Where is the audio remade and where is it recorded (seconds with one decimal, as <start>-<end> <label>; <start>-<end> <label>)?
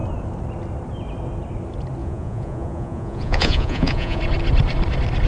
0.0-2.0 recorded; 2.0-4.2 remade; 4.2-5.3 recorded